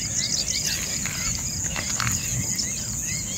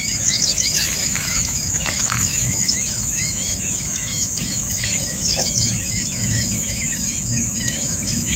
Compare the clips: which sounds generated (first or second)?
second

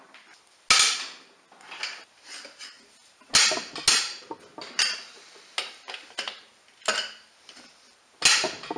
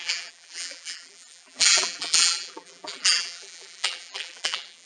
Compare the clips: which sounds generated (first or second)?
second